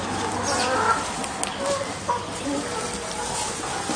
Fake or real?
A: real